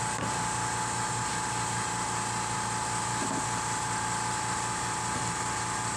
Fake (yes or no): no